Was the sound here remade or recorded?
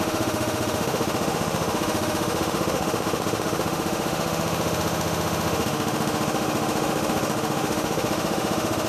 remade